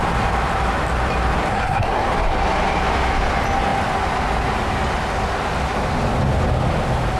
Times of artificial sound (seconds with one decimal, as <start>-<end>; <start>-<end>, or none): 1.5-2.1